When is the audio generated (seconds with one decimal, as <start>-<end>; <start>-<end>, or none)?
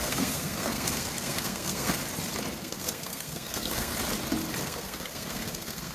0.0-2.0; 2.6-3.9; 4.6-5.9